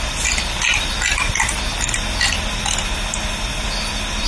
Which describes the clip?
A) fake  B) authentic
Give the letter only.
B